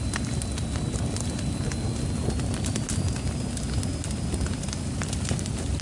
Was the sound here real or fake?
real